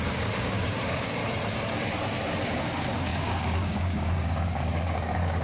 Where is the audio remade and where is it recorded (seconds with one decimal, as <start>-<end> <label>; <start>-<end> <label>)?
0.0-1.2 remade; 1.2-2.6 recorded; 2.6-5.4 remade